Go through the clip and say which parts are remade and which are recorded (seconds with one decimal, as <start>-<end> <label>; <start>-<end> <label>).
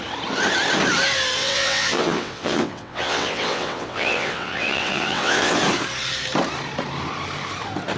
0.0-1.4 recorded; 1.4-5.6 remade; 5.6-8.0 recorded